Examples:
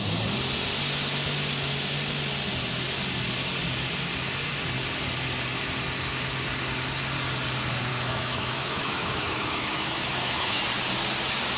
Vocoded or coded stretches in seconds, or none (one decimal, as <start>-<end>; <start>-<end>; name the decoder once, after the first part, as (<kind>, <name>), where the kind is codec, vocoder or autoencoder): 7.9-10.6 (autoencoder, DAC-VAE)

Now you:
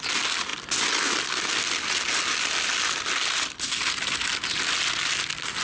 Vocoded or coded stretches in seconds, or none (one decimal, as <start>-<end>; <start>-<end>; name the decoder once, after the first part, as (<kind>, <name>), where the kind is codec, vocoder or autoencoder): none

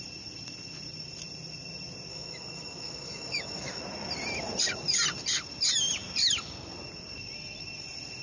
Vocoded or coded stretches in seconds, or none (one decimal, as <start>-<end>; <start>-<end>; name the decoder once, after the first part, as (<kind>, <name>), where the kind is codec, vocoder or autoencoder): 2.1-3.8 (autoencoder, DAC-VAE)